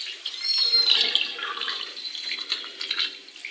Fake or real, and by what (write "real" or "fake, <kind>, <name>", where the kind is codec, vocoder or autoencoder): fake, vocoder, BigVGAN v2